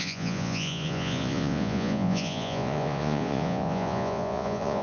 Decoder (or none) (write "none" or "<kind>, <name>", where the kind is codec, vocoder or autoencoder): vocoder, Vocos